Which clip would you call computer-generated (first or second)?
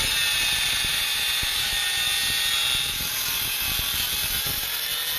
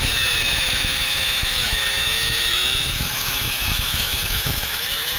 second